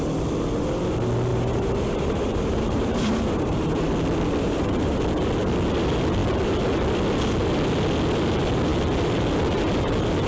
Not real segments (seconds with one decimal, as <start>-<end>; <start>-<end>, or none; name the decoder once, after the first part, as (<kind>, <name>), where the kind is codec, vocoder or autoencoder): 1.3-3.9 (vocoder, BigVGAN v2); 4.4-5.0